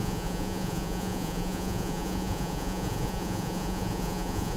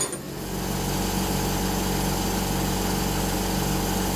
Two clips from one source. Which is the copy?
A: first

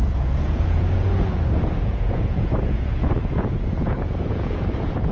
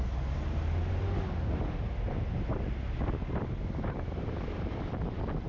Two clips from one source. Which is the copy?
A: first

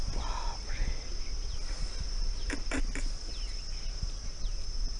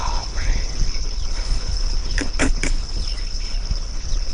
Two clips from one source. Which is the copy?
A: second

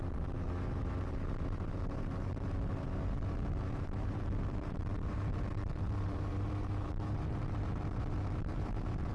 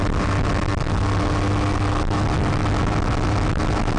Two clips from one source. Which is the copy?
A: first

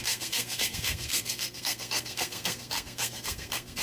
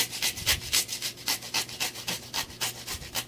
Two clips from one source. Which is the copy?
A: first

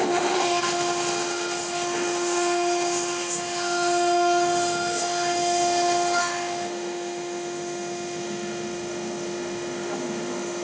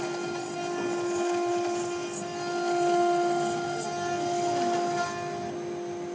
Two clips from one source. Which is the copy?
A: first